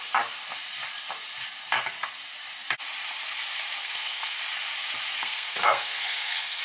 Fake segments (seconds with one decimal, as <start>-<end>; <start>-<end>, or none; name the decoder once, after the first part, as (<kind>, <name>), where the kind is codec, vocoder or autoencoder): 3.8-4.4 (codec, SNAC); 5.2-6.6